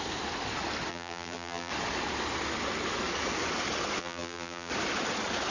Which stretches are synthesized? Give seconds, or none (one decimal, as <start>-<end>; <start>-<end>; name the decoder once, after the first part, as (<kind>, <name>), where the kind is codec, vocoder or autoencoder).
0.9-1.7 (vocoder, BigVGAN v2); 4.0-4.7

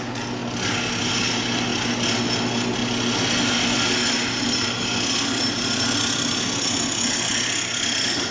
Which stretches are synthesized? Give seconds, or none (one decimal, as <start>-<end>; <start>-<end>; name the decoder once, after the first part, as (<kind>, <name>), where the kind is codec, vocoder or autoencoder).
none

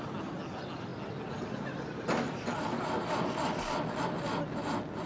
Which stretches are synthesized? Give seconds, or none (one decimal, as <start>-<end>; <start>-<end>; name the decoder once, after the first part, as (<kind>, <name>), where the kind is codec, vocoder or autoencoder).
none

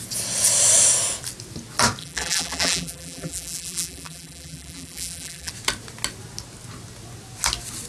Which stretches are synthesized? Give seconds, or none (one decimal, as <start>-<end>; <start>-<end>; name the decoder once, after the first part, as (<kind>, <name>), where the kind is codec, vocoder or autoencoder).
2.0-5.5 (vocoder, BigVGAN v2)

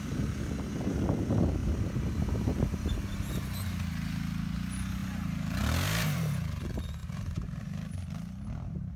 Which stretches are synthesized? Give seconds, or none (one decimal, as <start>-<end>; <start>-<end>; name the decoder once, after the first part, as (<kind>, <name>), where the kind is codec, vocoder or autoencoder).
1.6-3.5 (vocoder, BigVGAN v2); 5.0-5.6; 7.0-7.6

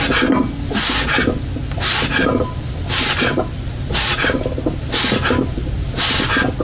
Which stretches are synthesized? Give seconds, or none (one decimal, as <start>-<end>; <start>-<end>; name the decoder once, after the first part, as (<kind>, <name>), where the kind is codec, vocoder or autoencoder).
none

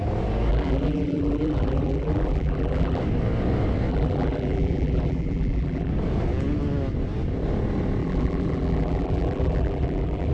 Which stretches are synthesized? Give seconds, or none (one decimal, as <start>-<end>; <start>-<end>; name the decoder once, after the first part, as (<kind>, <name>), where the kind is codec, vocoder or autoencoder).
0.5-3.0 (vocoder, BigVGAN v2); 3.9-5.9; 8.0-10.3